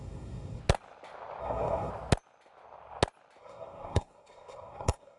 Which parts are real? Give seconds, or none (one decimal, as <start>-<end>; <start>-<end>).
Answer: 0.6-1.4; 1.9-3.4